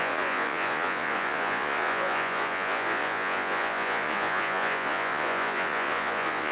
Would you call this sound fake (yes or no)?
yes